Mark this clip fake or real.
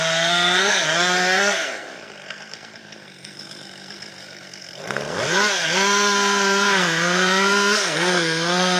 fake